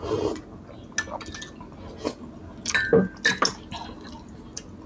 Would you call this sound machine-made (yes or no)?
no